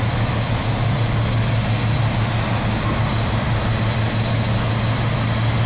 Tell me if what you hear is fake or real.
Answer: real